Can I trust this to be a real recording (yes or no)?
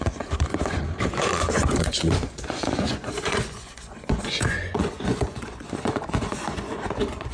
no